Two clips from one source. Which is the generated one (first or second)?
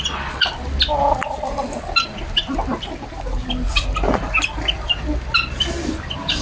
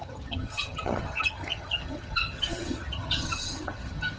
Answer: second